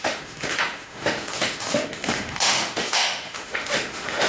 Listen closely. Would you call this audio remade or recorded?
remade